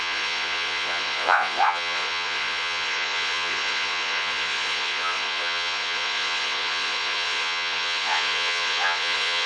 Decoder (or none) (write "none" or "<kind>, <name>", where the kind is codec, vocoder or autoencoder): vocoder, Vocos